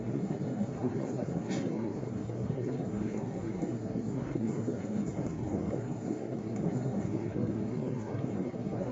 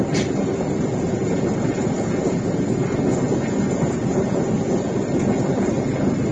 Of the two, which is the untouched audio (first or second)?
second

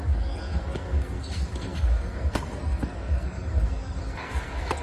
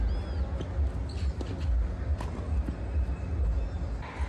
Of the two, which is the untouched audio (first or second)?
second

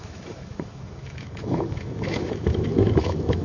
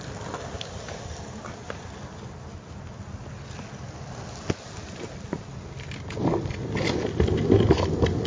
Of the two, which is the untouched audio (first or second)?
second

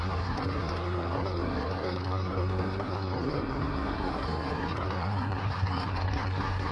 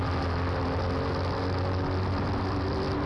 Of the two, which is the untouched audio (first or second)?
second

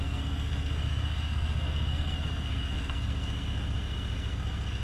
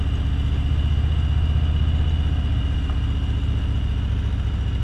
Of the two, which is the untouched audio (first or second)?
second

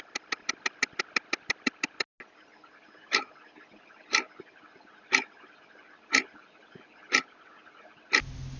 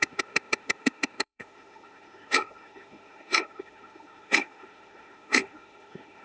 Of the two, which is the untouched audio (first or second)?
first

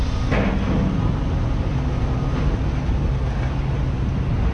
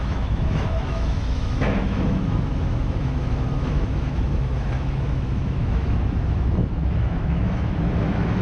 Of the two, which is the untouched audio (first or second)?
first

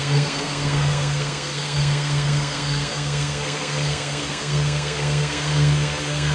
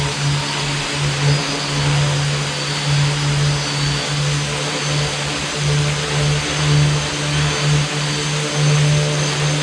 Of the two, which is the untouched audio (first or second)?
second